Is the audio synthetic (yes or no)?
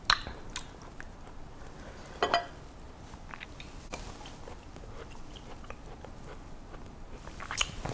no